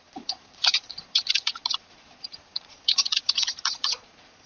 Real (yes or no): no